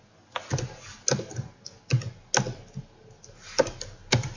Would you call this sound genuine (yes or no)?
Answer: yes